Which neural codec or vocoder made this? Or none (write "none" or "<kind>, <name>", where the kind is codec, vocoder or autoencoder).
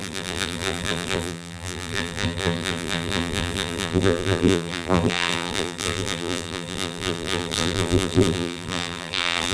vocoder, BigVGAN v2